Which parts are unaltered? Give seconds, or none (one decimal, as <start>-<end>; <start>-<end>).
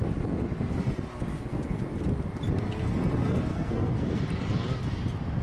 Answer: 0.0-1.3; 1.8-3.5; 4.2-5.4